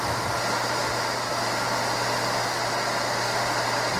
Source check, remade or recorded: recorded